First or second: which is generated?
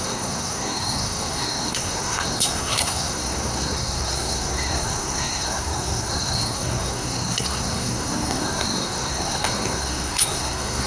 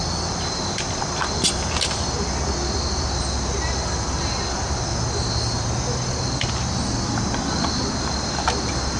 first